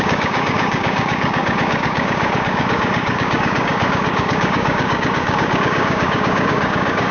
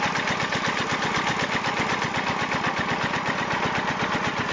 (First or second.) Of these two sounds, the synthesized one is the first